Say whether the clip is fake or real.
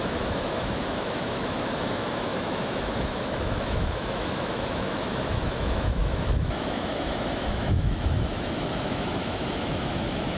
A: fake